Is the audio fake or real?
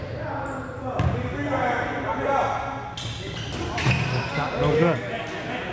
real